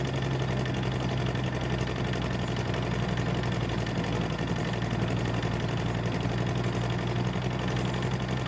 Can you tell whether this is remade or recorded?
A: recorded